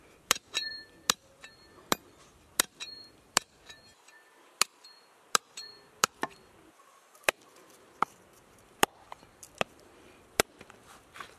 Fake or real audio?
fake